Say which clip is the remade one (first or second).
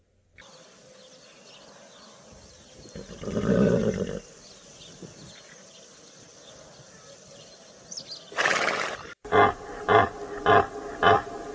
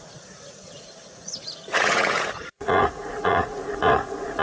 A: second